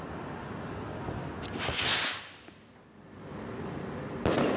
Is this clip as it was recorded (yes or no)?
yes